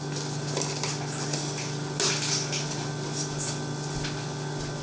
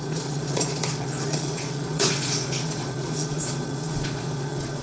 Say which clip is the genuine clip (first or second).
first